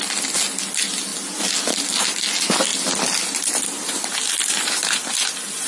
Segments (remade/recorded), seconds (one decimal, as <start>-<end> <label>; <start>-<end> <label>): 0.0-5.7 recorded